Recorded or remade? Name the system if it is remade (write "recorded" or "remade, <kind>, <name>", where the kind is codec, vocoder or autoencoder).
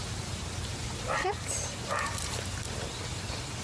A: recorded